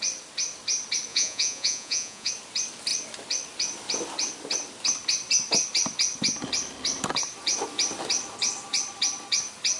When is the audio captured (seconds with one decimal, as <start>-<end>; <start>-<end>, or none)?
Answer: 0.0-1.1; 2.3-9.8